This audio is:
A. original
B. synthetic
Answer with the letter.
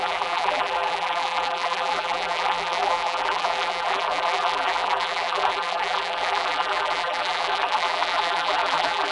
B